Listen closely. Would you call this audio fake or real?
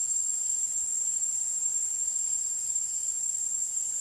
fake